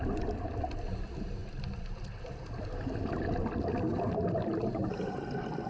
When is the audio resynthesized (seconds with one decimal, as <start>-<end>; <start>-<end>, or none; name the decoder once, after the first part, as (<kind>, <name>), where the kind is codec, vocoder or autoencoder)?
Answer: 3.9-4.8 (vocoder, BigVGAN v2)